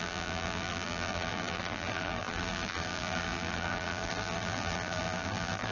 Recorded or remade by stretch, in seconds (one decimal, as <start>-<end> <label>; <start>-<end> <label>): 0.0-5.7 remade